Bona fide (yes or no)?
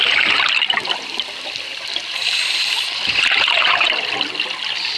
yes